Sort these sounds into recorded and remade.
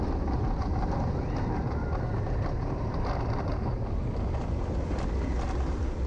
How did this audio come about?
recorded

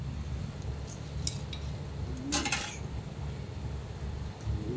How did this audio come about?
recorded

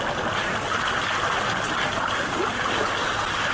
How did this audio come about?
recorded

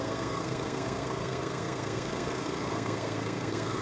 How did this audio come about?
remade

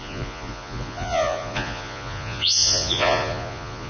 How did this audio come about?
remade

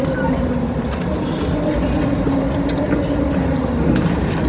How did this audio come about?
recorded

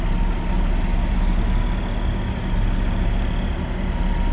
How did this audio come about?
recorded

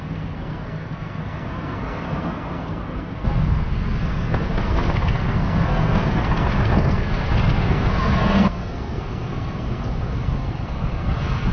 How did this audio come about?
remade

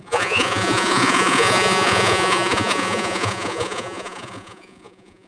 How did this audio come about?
remade